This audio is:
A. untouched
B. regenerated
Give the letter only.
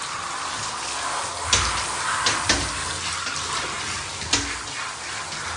A